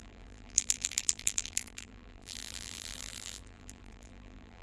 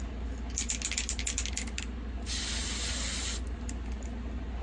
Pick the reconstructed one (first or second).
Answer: first